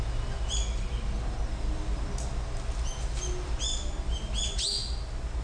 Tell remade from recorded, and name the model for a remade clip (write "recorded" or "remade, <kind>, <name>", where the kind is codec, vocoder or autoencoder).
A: recorded